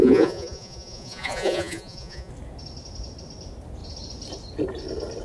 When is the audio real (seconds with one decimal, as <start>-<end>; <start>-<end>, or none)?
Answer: 2.3-5.2